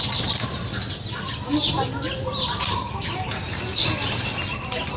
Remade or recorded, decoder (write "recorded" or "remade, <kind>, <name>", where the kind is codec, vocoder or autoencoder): recorded